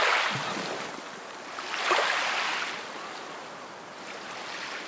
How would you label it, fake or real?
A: real